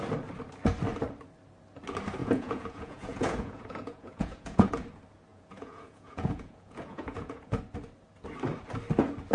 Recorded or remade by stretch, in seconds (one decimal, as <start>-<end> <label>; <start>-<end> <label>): 0.0-2.2 recorded; 2.2-4.7 remade; 4.7-5.3 recorded; 5.3-7.6 remade; 7.6-9.3 recorded